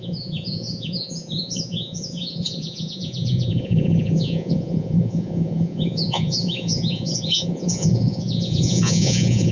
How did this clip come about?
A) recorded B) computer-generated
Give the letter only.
B